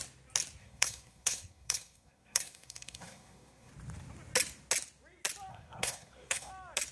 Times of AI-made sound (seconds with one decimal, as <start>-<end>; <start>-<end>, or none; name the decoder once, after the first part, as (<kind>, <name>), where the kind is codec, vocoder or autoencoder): 0.6-3.7 (codec, SNAC); 5.5-6.5